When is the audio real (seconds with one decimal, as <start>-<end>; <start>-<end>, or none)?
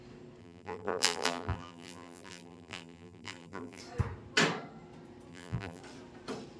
0.0-0.4; 3.8-5.3; 5.8-6.6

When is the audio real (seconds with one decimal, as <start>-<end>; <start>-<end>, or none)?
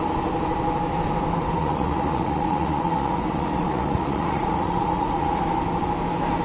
0.0-1.6; 5.4-6.4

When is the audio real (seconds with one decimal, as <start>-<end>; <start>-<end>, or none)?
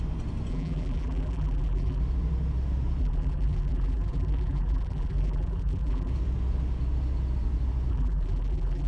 0.0-0.5; 2.0-3.0; 6.1-7.9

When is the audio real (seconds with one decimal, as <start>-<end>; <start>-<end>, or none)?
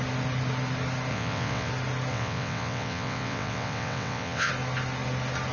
0.0-1.1; 1.7-2.1; 4.5-5.5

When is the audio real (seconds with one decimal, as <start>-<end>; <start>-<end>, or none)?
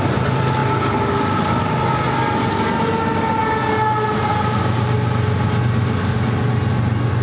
0.0-7.2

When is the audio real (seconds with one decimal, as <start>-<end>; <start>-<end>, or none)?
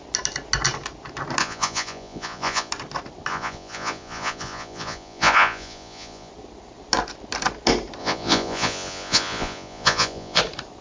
0.0-1.4; 2.7-3.3; 6.3-8.0; 10.4-10.8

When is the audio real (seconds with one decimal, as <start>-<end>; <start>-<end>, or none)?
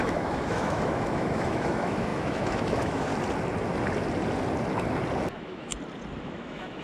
3.1-5.3; 5.7-6.2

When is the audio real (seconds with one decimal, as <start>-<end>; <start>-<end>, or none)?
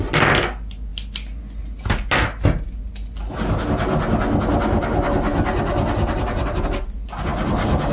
0.0-7.9